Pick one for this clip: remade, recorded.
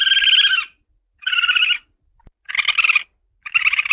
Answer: recorded